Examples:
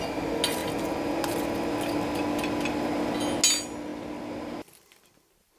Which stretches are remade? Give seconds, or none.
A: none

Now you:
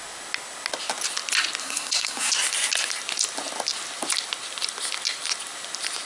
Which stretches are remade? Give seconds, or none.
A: 1.6-2.3 (codec, SNAC)

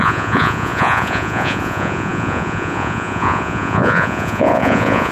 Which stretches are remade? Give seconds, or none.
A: 0.0-5.1 (vocoder, Vocos)

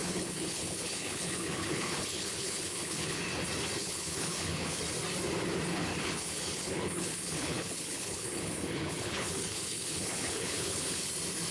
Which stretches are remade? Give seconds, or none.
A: 0.0-3.2 (codec, HILCodec); 3.8-4.8; 5.9-11.1

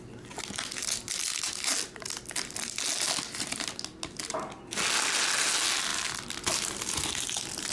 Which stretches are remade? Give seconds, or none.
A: none